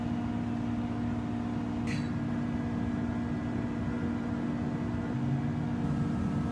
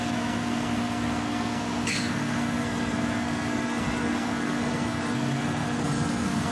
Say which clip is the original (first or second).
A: first